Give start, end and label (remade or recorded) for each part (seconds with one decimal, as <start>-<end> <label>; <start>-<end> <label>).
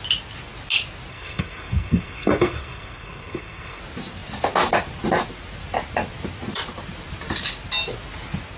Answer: 0.0-1.1 recorded; 1.1-3.8 remade; 3.8-8.6 recorded